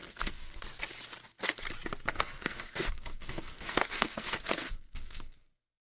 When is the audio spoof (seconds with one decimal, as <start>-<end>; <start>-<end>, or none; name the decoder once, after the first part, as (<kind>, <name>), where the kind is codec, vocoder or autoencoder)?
0.0-0.6 (codec, SNAC); 2.1-5.9